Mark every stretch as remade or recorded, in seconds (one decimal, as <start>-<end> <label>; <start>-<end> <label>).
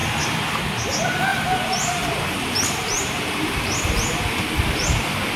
0.0-0.6 remade; 0.6-1.3 recorded; 1.3-4.0 remade; 4.0-5.4 recorded